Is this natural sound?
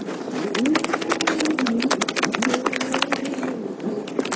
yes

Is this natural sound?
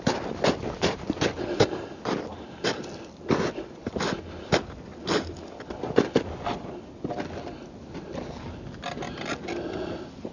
yes